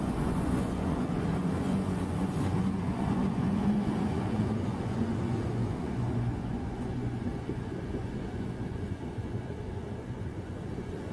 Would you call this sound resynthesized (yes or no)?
yes